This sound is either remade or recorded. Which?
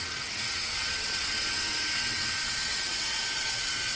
remade